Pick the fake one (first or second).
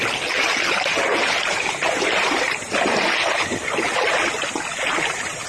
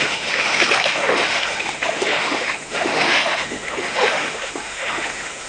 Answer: second